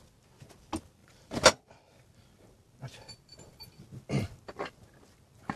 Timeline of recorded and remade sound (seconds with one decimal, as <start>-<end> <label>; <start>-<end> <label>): 0.0-1.0 recorded; 1.0-1.6 remade; 1.6-5.6 recorded

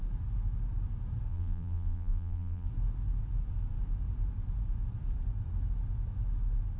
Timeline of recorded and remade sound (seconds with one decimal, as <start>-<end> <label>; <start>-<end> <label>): 0.0-1.3 recorded; 1.3-2.7 remade; 2.7-6.8 recorded

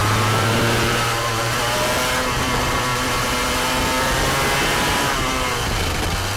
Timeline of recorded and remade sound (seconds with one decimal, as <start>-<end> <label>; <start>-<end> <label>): 0.0-1.6 remade; 1.6-4.7 recorded; 4.7-5.5 remade; 5.5-6.4 recorded

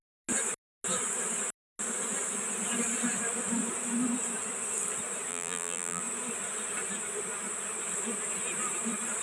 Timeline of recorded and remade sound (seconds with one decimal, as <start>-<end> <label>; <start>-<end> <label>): 0.0-5.3 recorded; 5.3-6.0 remade; 6.0-9.2 recorded

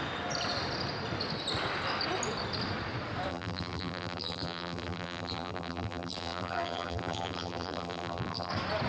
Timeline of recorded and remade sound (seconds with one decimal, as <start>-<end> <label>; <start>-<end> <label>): 0.0-3.3 recorded; 3.3-8.5 remade; 8.5-8.9 recorded